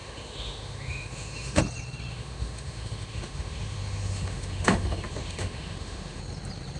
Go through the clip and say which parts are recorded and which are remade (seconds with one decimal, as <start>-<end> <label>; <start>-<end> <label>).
0.0-1.6 remade; 1.6-2.1 recorded; 2.1-6.2 remade; 6.2-6.8 recorded